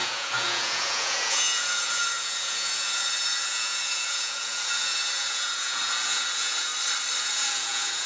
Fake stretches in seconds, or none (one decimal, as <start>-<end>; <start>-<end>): 0.0-6.7; 7.2-8.1

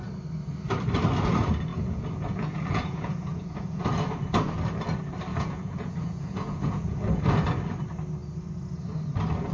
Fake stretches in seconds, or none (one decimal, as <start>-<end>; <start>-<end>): 1.7-3.8; 5.3-7.2

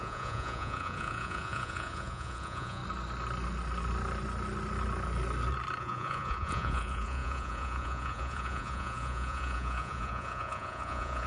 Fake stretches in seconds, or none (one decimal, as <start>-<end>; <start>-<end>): 0.0-2.8; 5.8-11.3

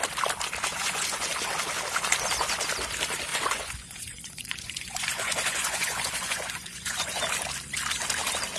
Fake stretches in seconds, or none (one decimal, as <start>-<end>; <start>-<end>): 0.7-1.3; 3.3-7.2

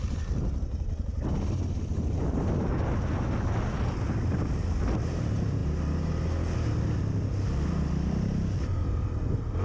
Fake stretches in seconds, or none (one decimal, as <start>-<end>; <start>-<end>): none

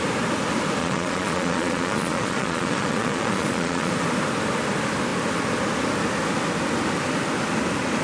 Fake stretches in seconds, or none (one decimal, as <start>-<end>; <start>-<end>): 0.8-3.9

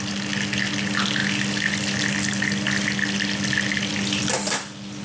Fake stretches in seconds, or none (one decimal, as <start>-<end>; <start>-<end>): none